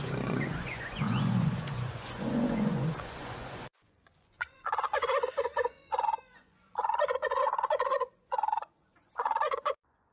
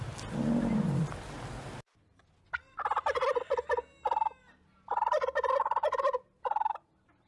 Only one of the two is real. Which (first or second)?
second